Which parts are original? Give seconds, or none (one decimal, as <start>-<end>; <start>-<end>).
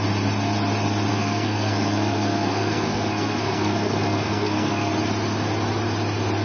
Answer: 0.0-1.1; 4.9-6.4